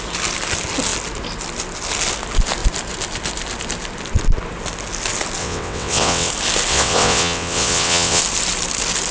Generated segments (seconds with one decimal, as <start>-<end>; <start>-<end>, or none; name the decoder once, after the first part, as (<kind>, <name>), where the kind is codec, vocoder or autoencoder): 5.4-6.3 (vocoder, WaveNeXt); 6.7-8.2